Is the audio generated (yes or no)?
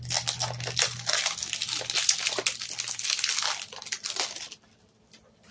no